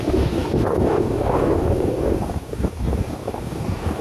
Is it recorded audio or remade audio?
remade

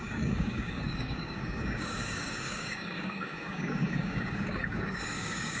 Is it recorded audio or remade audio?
remade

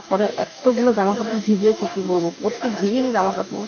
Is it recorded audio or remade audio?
remade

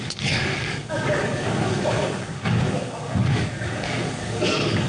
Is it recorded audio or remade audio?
remade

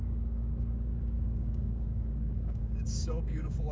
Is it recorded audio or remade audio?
remade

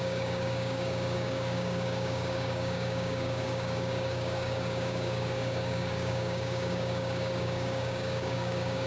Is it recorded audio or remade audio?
remade